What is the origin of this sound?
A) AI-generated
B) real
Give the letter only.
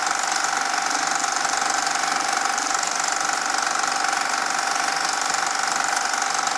B